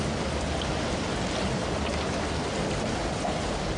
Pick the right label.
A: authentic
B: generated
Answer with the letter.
A